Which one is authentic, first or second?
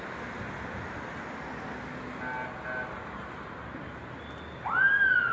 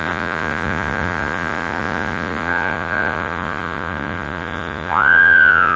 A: first